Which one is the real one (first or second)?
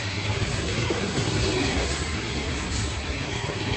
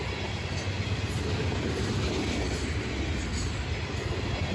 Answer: second